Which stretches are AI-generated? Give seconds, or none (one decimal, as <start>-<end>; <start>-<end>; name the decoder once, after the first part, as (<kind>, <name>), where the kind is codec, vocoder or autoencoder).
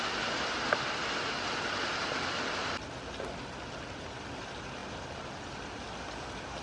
none